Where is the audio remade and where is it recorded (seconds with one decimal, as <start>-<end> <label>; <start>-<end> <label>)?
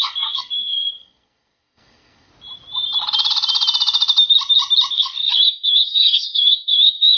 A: 0.0-2.3 remade; 2.3-4.9 recorded; 4.9-7.2 remade